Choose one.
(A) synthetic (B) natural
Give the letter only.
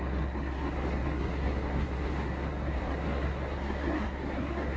A